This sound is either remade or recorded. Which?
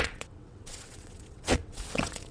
remade